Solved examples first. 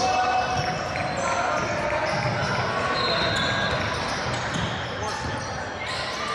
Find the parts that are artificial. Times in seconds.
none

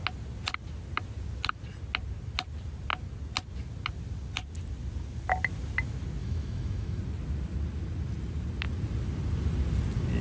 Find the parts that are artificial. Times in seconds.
6.2-7.0 (autoencoder, DAC-VAE)

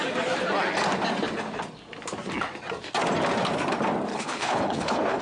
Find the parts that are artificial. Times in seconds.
4.1-5.2 (codec, HILCodec)

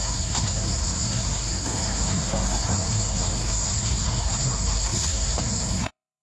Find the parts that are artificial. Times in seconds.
0.0-6.2 (codec, SNAC)

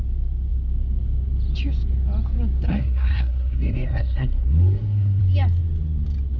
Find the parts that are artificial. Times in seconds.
2.7-5.2 (codec, SNAC)

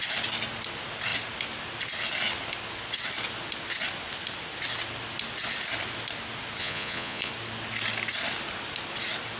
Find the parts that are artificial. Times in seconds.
6.6-7.3 (vocoder, Vocos)

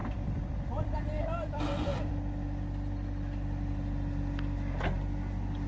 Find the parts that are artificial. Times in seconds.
0.0-2.1 (vocoder, BigVGAN v2)